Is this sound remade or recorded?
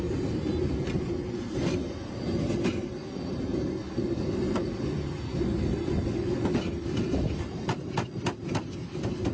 recorded